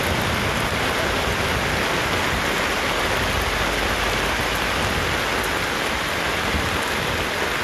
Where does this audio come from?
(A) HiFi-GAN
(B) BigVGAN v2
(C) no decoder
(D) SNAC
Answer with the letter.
C